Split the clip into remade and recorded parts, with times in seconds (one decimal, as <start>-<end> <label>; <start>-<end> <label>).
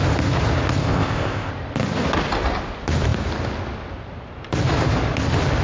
0.0-0.8 recorded; 0.8-1.5 remade; 1.5-5.6 recorded